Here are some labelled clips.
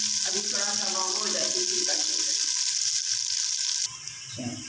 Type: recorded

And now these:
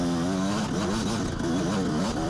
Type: recorded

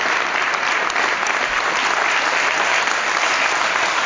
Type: recorded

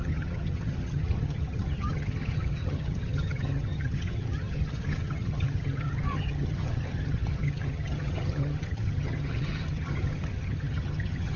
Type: remade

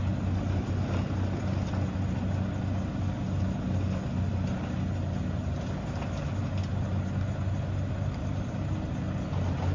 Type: recorded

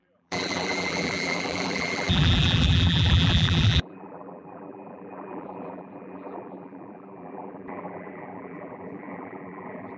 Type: remade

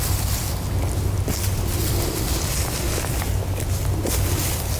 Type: recorded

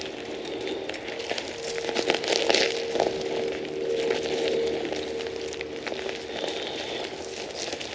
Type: recorded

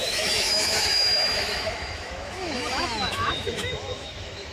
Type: remade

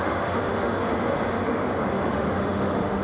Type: remade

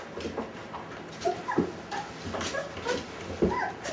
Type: recorded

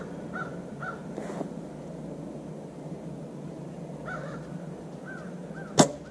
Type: recorded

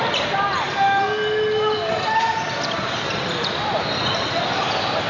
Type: recorded